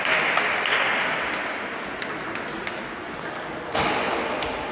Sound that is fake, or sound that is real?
real